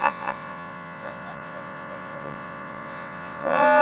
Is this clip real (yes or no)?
no